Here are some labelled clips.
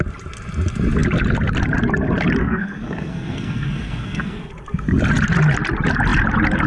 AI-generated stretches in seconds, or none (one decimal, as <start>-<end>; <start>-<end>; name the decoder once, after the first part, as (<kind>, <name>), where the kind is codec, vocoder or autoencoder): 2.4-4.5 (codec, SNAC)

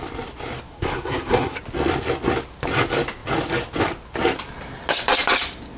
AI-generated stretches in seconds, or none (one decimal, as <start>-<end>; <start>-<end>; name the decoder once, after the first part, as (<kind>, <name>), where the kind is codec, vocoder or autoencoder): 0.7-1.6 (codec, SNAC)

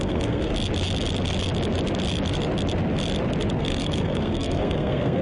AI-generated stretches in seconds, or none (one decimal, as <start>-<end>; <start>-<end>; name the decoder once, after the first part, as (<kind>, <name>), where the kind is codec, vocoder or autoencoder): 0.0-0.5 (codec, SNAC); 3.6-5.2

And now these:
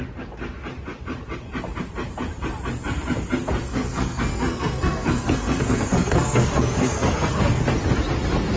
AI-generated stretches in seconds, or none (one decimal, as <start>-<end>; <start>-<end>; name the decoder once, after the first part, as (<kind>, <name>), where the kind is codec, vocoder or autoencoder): 3.6-7.6 (codec, SNAC)

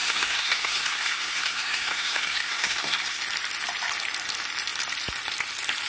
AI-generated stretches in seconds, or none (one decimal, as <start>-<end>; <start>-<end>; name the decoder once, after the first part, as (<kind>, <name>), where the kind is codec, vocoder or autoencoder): 0.0-3.2 (codec, SNAC)

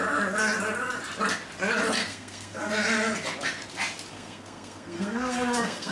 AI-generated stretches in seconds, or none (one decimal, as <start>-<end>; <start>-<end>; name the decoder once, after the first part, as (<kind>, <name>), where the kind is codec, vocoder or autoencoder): 2.0-2.7 (codec, SNAC); 4.1-5.9